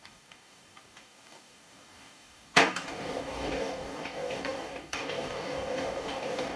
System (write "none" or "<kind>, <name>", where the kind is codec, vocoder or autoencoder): codec, DAC